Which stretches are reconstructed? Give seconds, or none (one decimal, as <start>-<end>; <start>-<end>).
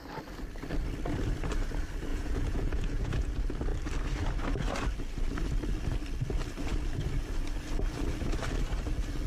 2.1-3.3